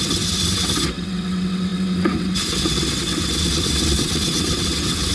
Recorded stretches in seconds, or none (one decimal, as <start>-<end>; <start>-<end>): none